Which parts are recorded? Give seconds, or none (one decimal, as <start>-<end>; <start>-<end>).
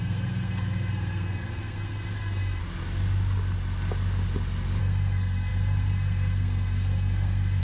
2.6-4.8